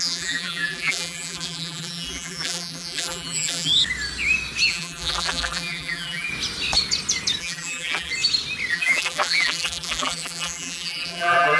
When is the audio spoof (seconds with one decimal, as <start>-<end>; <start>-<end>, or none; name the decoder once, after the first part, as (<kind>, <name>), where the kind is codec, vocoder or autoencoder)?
0.0-3.7 (vocoder, BigVGAN v2); 4.7-6.3; 7.4-8.1; 8.7-11.6